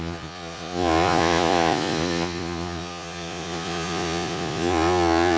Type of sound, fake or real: fake